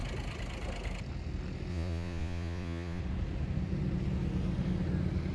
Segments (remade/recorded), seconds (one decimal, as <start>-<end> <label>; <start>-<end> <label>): 0.0-1.7 recorded; 1.7-3.0 remade; 3.0-5.3 recorded